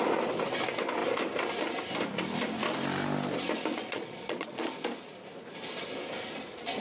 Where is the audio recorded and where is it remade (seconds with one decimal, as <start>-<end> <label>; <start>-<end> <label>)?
0.0-3.7 recorded; 3.7-4.7 remade; 4.7-6.8 recorded